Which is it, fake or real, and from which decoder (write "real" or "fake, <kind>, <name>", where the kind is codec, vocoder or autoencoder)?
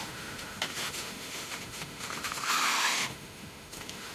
fake, autoencoder, DAC-VAE